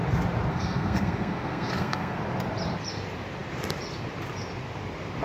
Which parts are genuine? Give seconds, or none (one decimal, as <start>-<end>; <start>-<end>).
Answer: 0.0-0.5; 2.2-5.2